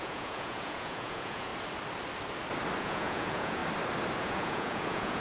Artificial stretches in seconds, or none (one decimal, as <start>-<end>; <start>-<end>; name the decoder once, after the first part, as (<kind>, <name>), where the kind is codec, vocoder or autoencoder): 0.0-1.5 (vocoder, Vocos); 2.8-3.6; 4.2-5.2